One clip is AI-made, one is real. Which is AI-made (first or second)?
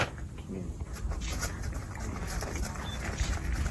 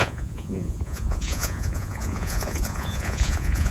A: second